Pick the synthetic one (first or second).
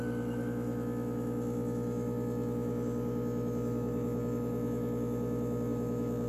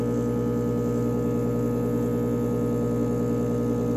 first